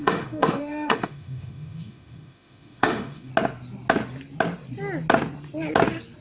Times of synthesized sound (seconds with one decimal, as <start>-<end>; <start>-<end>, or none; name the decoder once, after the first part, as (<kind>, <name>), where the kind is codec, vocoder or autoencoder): 0.0-3.3 (autoencoder, DAC-VAE)